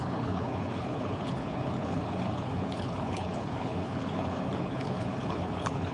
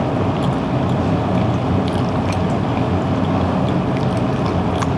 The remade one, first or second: first